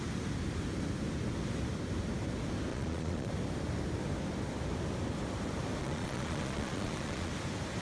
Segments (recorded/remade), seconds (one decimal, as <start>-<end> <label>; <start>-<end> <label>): 0.0-2.7 recorded; 2.7-3.3 remade; 3.3-5.8 recorded; 5.8-7.3 remade; 7.3-7.8 recorded